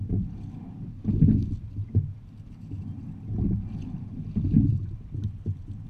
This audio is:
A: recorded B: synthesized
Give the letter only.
A